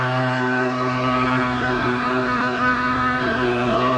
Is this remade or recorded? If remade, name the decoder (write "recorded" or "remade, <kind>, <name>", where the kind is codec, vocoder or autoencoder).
remade, codec, SNAC